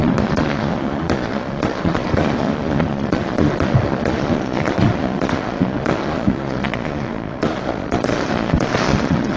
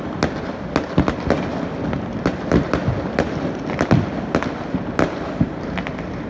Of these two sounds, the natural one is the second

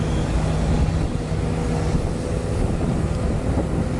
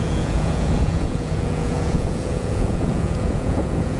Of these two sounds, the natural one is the first